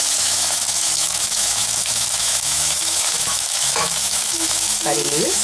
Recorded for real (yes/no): no